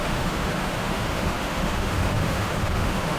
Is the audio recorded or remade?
remade